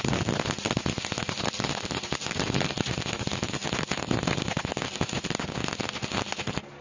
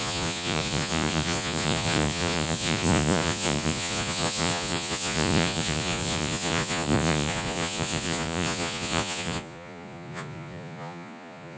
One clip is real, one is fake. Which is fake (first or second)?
second